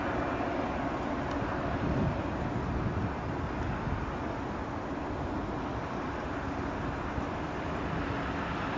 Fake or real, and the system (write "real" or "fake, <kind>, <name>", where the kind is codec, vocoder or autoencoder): real